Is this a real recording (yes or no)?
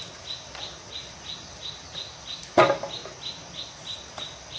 yes